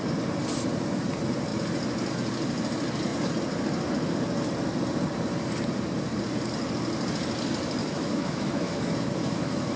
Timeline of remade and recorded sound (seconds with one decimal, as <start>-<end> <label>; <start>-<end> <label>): 0.0-7.8 recorded; 7.8-9.8 remade